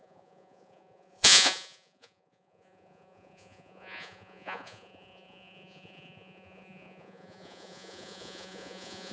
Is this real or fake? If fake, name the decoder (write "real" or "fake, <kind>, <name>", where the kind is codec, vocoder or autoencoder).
fake, vocoder, Vocos